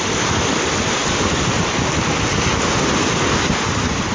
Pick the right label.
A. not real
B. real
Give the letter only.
B